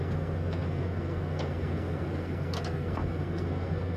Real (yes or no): no